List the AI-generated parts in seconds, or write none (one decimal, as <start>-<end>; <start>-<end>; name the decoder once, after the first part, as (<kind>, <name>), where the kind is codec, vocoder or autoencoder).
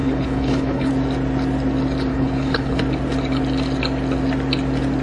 0.0-0.9 (codec, HILCodec); 2.1-2.8